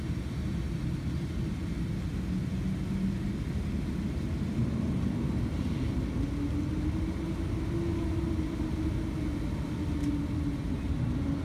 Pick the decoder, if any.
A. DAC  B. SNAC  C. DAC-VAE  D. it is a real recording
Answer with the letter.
D